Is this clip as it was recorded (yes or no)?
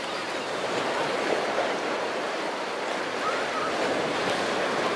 yes